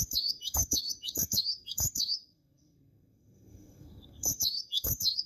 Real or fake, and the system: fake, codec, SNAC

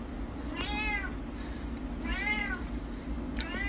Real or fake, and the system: real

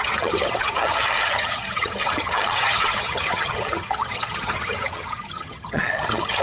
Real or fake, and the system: fake, vocoder, HiFi-GAN